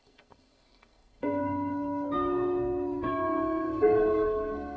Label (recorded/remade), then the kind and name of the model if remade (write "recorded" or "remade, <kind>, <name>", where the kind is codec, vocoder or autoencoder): remade, codec, SNAC